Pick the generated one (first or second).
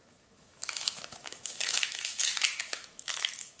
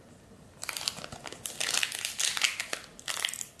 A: first